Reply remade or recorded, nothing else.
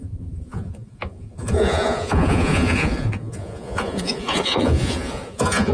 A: remade